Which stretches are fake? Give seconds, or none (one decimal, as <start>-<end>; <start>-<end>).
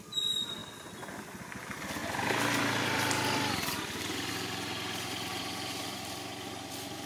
2.0-4.3; 5.3-6.3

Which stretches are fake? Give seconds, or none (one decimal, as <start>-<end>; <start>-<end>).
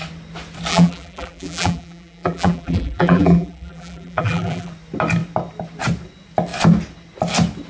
0.7-4.7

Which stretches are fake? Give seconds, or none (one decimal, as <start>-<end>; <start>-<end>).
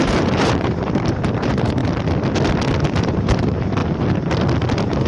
0.0-1.8; 3.0-3.8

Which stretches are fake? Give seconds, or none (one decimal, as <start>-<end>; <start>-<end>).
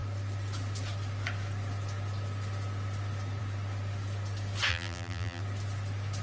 4.7-5.4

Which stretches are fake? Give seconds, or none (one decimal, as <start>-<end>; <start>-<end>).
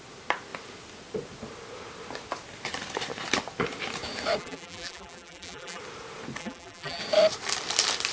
4.4-5.8; 6.4-7.0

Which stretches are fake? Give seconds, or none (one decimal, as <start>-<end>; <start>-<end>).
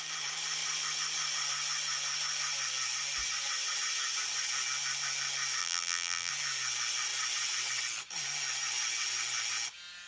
5.6-6.3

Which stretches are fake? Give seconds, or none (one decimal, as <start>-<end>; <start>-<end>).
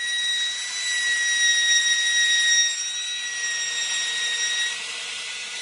none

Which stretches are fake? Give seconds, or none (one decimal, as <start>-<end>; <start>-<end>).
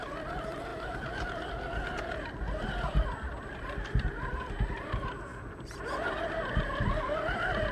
none